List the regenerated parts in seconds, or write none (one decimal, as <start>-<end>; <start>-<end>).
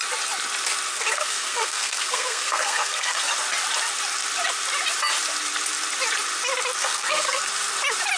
0.9-3.3; 6.8-7.4